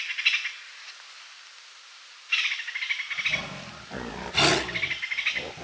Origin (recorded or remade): recorded